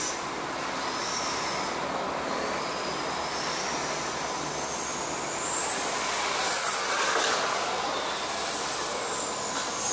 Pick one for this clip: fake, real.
real